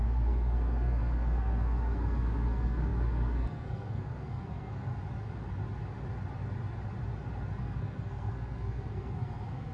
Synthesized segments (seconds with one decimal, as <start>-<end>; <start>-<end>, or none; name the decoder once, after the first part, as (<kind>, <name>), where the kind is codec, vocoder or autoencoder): 0.0-4.9 (codec, SNAC); 7.6-9.7